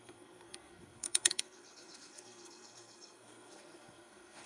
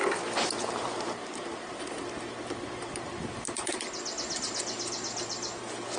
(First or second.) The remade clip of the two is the first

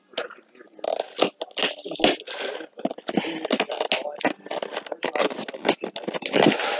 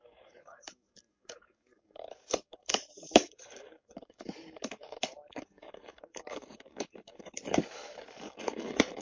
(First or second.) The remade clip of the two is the second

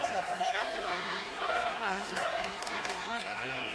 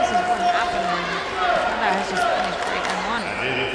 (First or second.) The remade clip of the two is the first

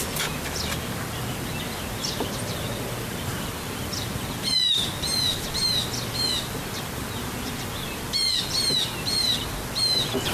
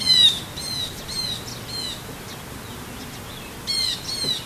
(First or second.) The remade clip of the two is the first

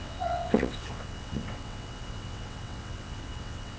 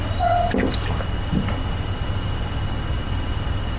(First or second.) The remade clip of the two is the first